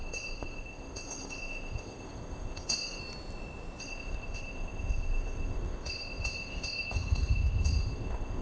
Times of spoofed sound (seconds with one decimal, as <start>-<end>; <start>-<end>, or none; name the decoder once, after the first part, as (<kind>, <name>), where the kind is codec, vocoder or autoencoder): 0.0-3.0 (codec, ZipCodec); 3.8-8.4